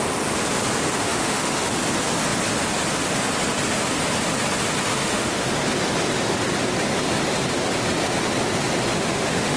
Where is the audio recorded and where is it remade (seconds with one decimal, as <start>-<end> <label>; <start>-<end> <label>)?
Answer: 0.0-1.0 recorded; 1.0-1.7 remade; 1.7-4.9 recorded; 4.9-5.5 remade; 5.5-8.9 recorded; 8.9-9.6 remade